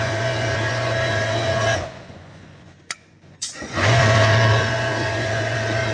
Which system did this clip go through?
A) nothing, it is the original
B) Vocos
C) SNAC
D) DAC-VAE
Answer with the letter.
B